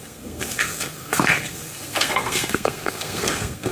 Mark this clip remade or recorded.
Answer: remade